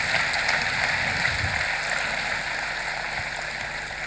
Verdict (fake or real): real